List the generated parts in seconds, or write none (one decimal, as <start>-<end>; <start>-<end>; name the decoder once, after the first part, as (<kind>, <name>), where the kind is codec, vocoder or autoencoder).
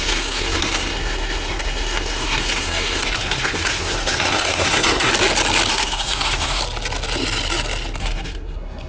0.0-5.1 (codec, SNAC); 5.7-6.6; 8.0-8.9